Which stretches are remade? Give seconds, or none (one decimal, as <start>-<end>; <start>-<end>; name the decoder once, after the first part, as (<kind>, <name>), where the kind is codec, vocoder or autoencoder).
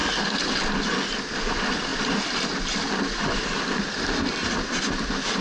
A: none